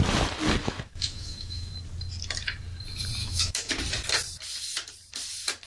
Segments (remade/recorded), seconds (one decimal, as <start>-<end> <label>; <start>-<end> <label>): 0.0-0.6 recorded; 0.6-1.7 remade; 1.7-3.2 recorded; 3.2-3.7 remade; 3.7-5.7 recorded